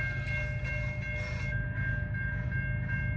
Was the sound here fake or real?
real